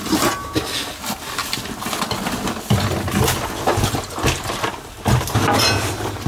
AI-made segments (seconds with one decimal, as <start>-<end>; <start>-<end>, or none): none